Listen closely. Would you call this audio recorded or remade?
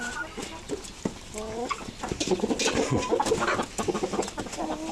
recorded